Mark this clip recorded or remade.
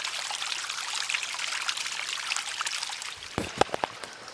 recorded